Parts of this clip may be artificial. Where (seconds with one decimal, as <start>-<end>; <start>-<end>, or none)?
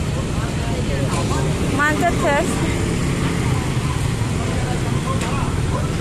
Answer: 3.0-4.2